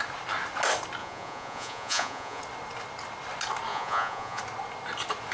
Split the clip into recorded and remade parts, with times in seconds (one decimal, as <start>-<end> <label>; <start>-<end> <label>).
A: 0.0-1.0 recorded; 1.0-2.4 remade; 2.4-3.7 recorded; 3.7-4.4 remade; 4.4-5.3 recorded